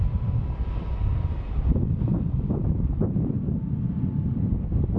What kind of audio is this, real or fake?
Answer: real